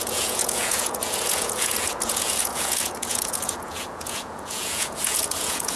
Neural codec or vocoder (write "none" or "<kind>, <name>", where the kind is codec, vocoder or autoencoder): vocoder, Vocos